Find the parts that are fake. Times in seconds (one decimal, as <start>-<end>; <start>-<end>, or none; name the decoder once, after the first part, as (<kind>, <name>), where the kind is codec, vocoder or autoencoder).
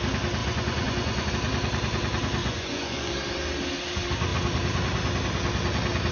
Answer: 0.4-1.3 (vocoder, Vocos); 2.4-3.1